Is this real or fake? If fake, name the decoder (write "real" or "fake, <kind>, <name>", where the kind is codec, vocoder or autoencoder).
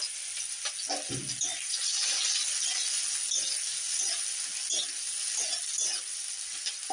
real